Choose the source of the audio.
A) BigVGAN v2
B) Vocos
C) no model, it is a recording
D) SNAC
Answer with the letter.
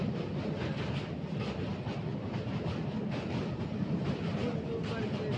C